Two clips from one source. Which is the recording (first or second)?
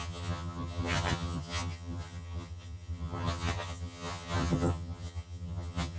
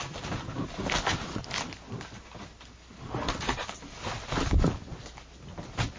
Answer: second